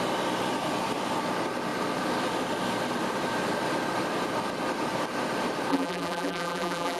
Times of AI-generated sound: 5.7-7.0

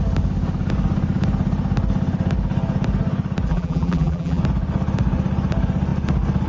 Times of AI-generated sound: 3.5-4.4